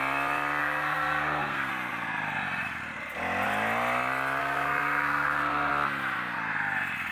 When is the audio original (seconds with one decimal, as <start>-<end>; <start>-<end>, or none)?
0.0-0.6; 1.7-4.4; 5.7-7.1